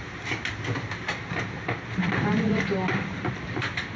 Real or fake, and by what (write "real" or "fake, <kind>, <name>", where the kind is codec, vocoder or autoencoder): fake, vocoder, BigVGAN v2